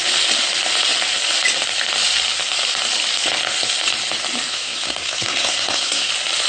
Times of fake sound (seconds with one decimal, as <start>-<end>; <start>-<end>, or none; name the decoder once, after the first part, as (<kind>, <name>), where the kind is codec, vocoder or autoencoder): 4.5-6.1 (codec, SNAC)